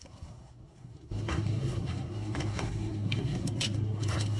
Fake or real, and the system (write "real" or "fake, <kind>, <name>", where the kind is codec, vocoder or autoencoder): fake, codec, SNAC